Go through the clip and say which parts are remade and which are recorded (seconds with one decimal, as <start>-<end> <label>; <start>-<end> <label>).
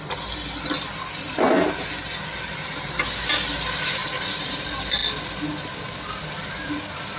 0.0-7.2 recorded